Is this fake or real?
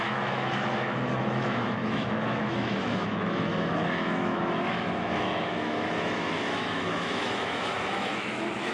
fake